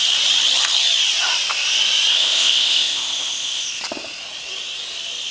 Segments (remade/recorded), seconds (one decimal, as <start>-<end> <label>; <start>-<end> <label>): 0.0-2.1 recorded; 2.1-3.8 remade; 3.8-5.3 recorded